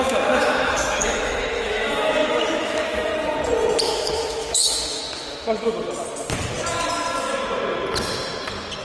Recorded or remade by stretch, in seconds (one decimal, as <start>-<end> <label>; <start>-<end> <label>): 0.0-3.1 remade; 3.1-3.8 recorded; 3.8-5.0 remade; 5.0-8.8 recorded